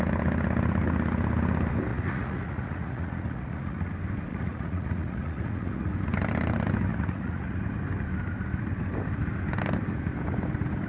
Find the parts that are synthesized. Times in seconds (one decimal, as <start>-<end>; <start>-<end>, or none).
1.9-3.9; 4.3-5.9; 6.9-7.6